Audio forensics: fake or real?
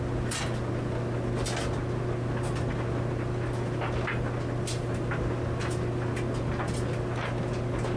real